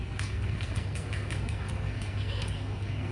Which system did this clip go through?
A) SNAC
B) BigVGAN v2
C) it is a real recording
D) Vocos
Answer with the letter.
A